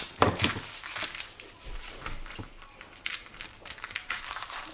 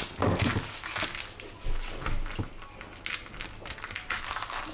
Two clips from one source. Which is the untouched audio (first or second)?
second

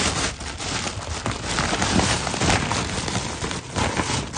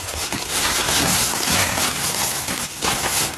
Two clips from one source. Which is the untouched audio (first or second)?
first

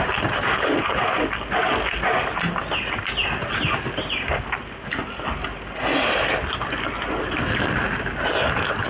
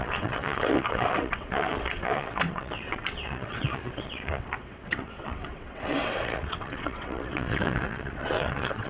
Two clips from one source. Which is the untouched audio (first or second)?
first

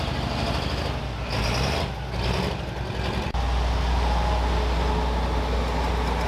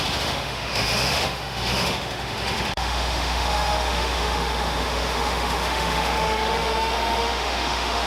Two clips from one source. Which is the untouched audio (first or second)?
first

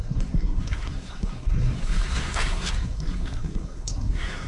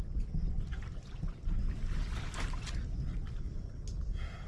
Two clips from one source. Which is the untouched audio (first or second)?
second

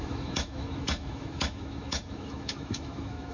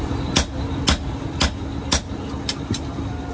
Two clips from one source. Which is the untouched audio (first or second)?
second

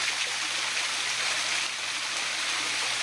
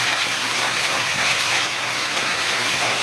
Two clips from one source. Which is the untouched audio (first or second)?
first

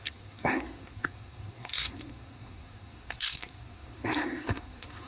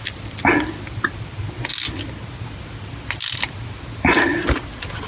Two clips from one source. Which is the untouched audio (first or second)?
second